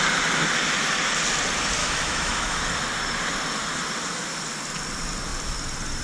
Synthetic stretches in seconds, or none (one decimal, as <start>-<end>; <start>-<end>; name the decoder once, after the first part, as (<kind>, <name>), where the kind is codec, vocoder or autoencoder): 1.8-2.6 (autoencoder, DAC-VAE)